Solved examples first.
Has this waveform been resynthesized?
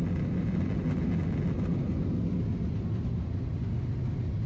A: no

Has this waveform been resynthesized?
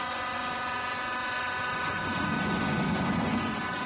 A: yes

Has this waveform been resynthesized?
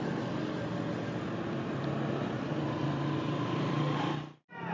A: no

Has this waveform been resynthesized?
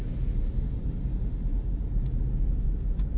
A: no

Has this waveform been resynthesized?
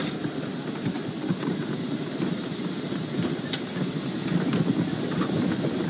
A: no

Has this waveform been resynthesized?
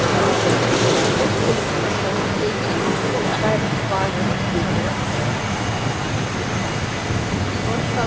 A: no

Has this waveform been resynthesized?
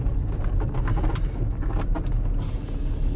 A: no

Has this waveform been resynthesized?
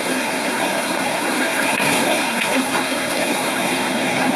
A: yes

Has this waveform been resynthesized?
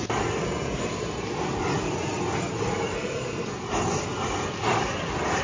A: no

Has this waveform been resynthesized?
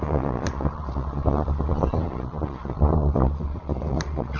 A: yes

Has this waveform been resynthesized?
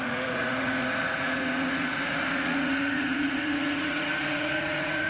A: yes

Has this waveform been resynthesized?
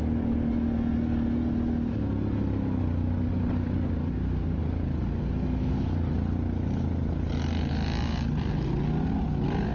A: no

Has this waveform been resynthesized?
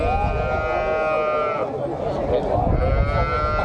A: no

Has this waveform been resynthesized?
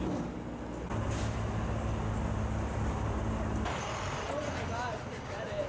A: no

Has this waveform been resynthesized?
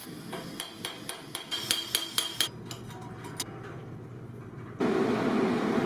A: no